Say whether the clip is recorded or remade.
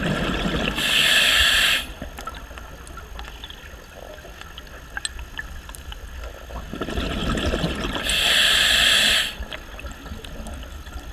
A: recorded